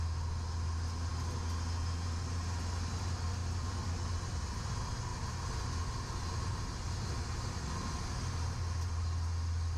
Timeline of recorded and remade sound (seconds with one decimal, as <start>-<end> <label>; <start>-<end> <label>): 0.0-3.4 recorded; 3.4-4.0 remade; 4.0-9.8 recorded